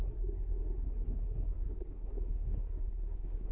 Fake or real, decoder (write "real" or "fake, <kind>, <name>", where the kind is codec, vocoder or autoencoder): fake, codec, SNAC